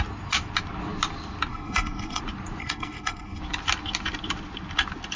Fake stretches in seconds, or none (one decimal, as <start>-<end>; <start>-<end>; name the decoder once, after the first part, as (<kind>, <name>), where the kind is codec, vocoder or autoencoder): 1.5-2.2 (codec, SNAC); 2.6-3.4